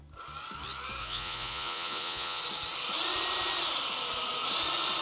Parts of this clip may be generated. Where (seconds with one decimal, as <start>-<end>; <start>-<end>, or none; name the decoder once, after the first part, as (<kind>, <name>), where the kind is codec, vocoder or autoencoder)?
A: 1.0-2.4 (vocoder, Vocos)